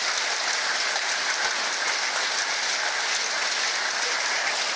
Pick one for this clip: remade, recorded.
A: recorded